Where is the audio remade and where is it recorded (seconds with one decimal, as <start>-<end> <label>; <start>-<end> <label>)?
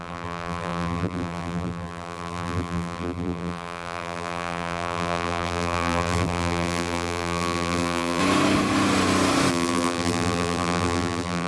0.0-8.2 remade; 8.2-9.5 recorded; 9.5-11.5 remade